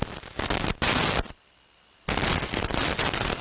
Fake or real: real